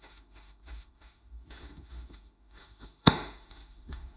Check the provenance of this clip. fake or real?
fake